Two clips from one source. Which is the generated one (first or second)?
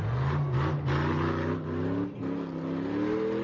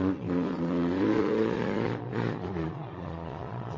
second